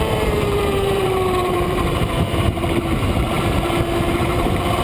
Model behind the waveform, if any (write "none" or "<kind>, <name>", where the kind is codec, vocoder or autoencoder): vocoder, BigVGAN v2